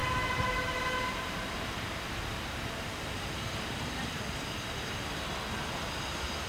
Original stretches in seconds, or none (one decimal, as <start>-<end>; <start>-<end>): 3.9-6.5